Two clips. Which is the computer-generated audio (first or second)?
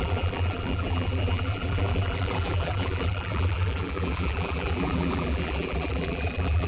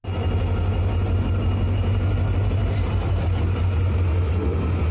first